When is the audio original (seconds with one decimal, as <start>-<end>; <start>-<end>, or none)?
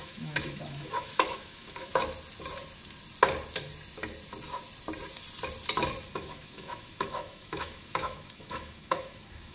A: 1.9-6.1